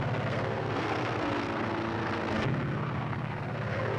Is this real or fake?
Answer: fake